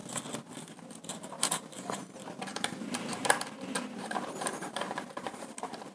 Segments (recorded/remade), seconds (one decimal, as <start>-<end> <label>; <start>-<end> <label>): 0.0-0.8 recorded; 0.8-5.9 remade